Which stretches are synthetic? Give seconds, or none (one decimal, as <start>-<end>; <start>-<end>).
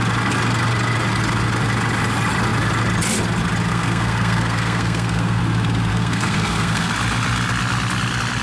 3.7-5.4; 5.9-6.9